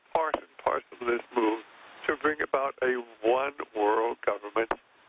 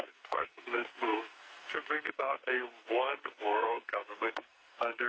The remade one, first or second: second